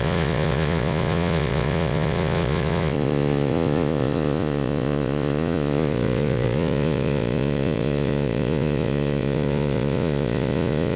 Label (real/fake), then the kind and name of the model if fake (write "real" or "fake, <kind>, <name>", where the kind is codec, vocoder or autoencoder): fake, vocoder, Vocos